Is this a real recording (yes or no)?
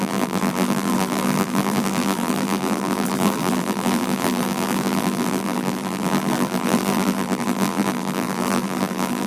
no